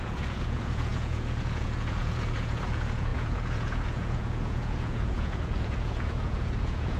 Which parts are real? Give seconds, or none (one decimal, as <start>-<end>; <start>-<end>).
none